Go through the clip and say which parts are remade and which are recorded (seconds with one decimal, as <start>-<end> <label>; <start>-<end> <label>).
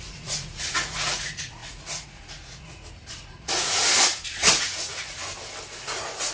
0.0-3.8 remade; 3.8-4.5 recorded; 4.5-5.2 remade; 5.2-5.8 recorded; 5.8-6.3 remade